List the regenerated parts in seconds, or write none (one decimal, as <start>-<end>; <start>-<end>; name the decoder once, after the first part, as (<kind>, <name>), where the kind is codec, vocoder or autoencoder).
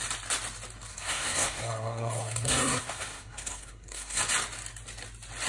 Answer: 0.9-4.2 (codec, SNAC)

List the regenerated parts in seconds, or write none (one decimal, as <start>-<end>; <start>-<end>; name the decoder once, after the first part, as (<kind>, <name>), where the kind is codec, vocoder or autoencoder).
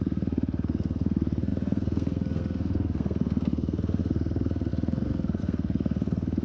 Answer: 0.0-6.4 (codec, SNAC)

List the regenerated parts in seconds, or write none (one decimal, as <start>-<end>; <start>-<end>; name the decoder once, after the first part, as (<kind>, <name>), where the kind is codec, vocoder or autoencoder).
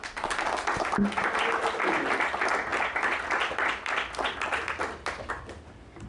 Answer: none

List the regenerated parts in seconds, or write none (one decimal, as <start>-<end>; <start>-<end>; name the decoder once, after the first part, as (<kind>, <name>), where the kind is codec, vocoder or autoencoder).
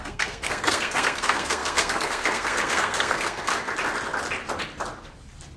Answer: 0.0-3.5 (codec, SNAC)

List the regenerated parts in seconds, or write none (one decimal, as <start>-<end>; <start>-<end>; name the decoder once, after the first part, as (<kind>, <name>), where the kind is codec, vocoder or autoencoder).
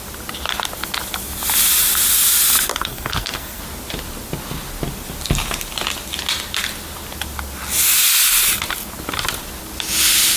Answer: 2.7-3.6 (codec, SNAC)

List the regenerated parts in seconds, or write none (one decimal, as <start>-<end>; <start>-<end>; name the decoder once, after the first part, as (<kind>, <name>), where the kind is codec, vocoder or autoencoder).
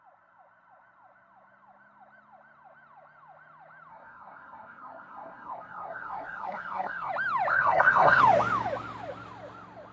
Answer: 3.9-7.1 (codec, SNAC); 7.5-8.2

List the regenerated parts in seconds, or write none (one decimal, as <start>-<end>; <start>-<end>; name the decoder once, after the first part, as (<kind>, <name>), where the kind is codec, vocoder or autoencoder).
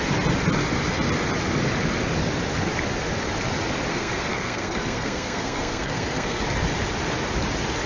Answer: 3.9-6.4 (codec, SNAC)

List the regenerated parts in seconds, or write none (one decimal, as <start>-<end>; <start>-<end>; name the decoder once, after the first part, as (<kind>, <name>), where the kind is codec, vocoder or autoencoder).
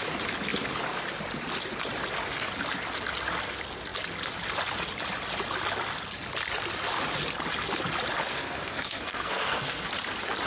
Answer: 8.3-9.9 (codec, SNAC)